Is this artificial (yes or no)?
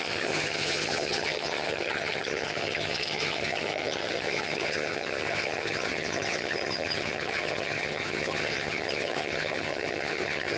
yes